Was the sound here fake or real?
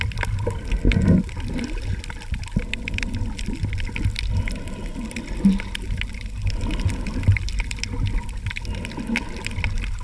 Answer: real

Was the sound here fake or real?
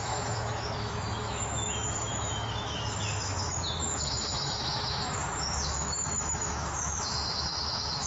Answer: fake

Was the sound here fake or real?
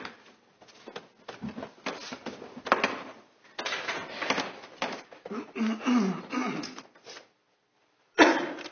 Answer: real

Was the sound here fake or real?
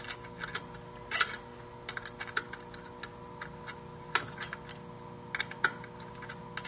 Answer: real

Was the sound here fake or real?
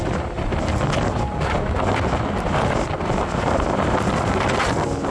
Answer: real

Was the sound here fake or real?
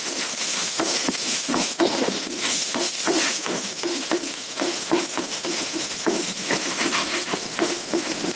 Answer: fake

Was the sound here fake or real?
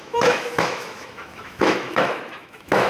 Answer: fake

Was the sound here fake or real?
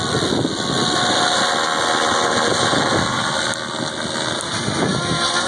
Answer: real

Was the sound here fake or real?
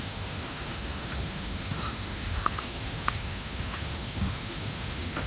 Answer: fake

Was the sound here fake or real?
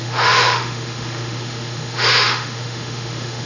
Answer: fake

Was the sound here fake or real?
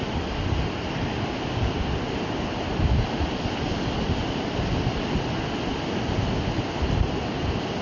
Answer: real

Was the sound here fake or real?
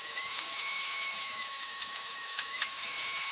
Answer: fake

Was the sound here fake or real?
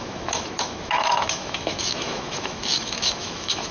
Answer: fake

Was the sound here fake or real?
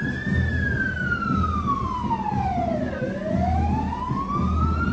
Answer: real